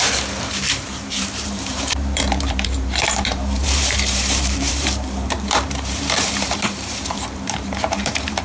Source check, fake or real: fake